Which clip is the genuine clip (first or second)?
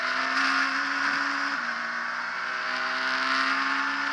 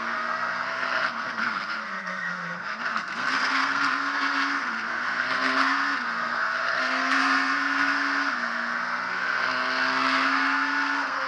first